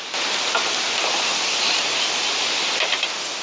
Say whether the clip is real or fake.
real